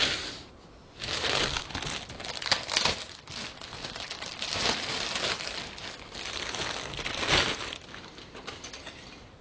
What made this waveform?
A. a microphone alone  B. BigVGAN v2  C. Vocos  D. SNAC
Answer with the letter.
A